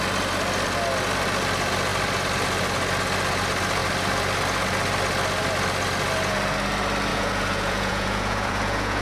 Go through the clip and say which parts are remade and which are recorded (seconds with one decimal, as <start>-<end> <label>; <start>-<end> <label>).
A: 0.0-7.1 recorded; 7.1-9.0 remade